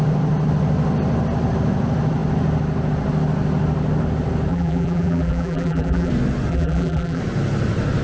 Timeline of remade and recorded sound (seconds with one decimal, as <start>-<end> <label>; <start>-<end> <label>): 0.0-4.5 recorded; 4.5-6.1 remade; 6.1-6.5 recorded; 6.5-7.2 remade; 7.2-8.0 recorded